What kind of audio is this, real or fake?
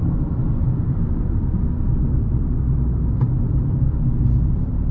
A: fake